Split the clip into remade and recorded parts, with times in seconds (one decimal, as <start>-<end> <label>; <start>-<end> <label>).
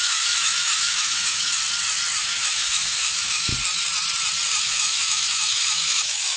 0.0-1.5 remade; 1.5-2.2 recorded; 2.2-3.5 remade; 3.5-4.6 recorded; 4.6-6.4 remade